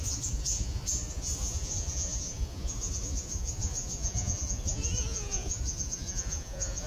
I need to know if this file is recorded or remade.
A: remade